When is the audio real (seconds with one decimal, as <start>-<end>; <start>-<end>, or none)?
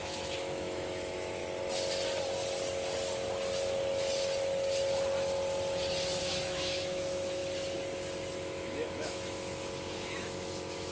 1.4-6.2; 7.4-8.3